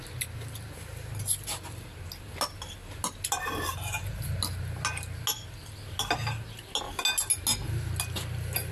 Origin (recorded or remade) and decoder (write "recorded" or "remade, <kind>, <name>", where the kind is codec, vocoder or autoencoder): recorded